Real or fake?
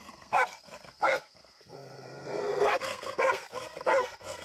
fake